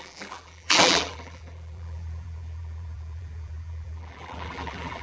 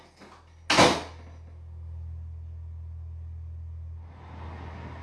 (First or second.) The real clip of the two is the second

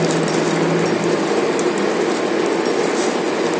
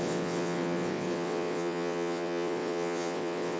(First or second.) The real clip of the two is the first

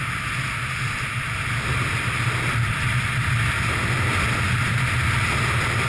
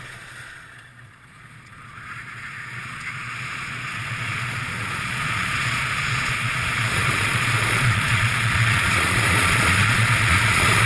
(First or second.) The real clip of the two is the first